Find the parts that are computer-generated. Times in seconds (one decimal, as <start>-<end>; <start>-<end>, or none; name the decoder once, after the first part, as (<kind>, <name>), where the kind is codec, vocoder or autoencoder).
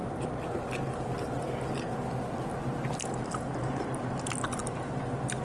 0.0-3.2 (vocoder, BigVGAN v2); 4.6-5.4